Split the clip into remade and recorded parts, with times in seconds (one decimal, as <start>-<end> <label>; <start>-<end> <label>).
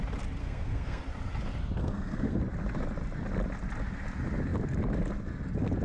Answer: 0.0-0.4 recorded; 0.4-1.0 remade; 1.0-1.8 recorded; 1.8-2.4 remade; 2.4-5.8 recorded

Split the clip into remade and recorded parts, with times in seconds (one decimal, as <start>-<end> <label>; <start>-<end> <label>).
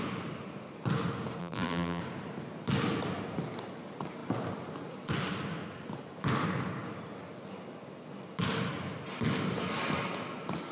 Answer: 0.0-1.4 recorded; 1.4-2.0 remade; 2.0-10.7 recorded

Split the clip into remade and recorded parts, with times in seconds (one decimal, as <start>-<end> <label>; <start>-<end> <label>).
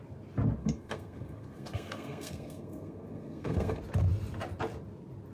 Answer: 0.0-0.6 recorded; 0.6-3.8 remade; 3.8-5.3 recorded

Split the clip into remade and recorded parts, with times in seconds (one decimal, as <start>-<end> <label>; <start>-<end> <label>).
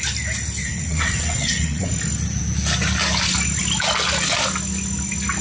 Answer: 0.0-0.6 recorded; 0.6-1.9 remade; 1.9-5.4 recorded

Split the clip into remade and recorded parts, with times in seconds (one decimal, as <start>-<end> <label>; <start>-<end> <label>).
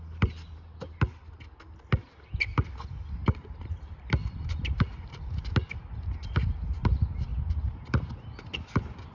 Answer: 0.0-3.2 recorded; 3.2-5.4 remade; 5.4-7.3 recorded; 7.3-8.4 remade; 8.4-9.1 recorded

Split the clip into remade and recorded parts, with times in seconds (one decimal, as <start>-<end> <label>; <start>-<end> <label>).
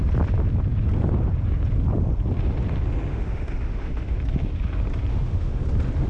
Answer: 0.0-3.1 recorded; 3.1-4.2 remade; 4.2-5.1 recorded; 5.1-5.6 remade; 5.6-6.1 recorded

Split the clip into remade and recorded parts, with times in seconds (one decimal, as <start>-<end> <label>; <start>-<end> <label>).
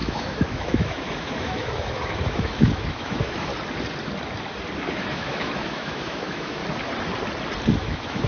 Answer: 0.0-3.5 remade; 3.5-4.9 recorded; 4.9-6.6 remade; 6.6-7.7 recorded; 7.7-8.3 remade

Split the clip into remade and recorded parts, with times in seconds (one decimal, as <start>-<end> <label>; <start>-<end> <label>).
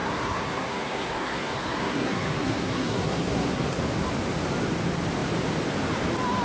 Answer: 0.0-3.8 remade; 3.8-6.4 recorded